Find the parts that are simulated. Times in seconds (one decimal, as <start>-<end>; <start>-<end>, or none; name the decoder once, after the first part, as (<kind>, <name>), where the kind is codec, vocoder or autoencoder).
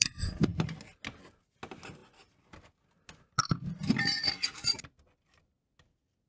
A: none